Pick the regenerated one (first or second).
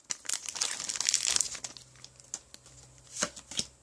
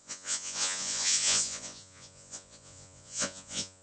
second